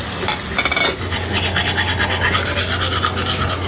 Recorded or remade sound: recorded